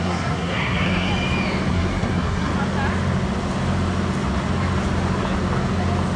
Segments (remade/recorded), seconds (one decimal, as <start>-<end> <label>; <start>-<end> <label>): 0.0-1.1 remade; 1.1-1.7 recorded; 1.7-2.5 remade; 2.5-6.2 recorded